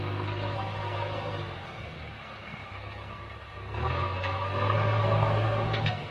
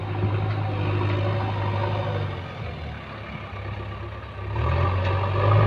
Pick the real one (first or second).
second